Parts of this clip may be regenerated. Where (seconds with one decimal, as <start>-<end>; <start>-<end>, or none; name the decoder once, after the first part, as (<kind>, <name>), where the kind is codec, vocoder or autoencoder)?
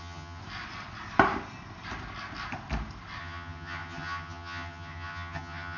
0.0-0.4 (vocoder, HiFi-GAN); 3.2-5.8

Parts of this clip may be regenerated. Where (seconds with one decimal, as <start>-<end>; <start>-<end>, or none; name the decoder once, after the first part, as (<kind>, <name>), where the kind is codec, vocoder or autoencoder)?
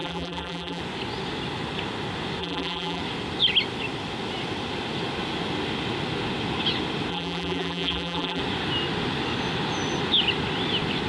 0.0-0.8 (vocoder, BigVGAN v2); 2.4-3.0; 7.1-8.4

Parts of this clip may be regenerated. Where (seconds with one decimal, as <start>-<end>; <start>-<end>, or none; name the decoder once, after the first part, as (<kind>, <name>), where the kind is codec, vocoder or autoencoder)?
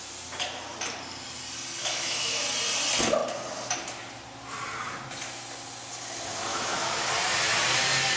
1.8-2.4 (autoencoder, DAC-VAE); 6.5-7.1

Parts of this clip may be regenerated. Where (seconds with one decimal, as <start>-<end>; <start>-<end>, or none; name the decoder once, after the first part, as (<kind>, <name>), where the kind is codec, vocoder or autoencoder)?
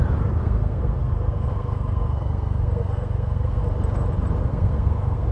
0.4-3.6 (codec, SNAC); 4.4-5.3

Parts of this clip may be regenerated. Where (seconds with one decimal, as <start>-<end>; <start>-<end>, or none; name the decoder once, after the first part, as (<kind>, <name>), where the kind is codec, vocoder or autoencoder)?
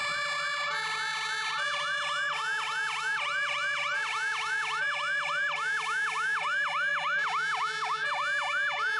none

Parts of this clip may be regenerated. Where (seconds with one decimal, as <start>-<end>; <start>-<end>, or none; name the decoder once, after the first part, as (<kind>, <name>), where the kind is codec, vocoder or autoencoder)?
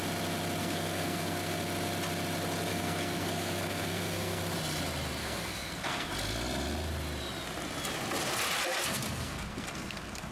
0.6-1.6 (codec, SNAC); 2.7-4.4; 5.2-6.1; 8.8-10.3